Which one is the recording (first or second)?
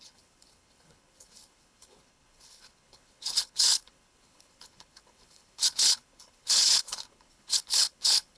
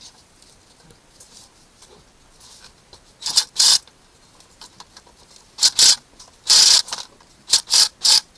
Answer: second